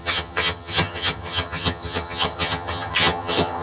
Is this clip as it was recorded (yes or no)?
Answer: no